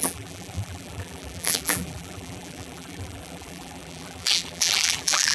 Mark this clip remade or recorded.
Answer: remade